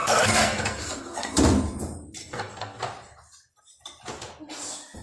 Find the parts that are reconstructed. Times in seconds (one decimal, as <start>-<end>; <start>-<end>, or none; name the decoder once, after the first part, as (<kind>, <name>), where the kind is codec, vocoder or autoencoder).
0.0-1.3 (codec, SNAC); 2.2-2.8